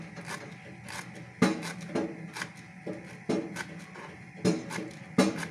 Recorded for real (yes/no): yes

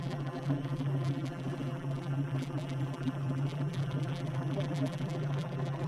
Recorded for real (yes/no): no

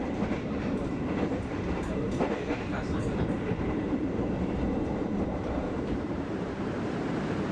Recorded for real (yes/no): no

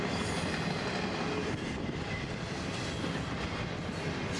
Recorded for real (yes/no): no